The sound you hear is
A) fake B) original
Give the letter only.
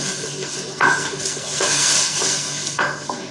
A